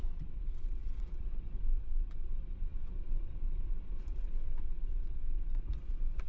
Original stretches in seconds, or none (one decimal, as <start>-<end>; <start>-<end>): none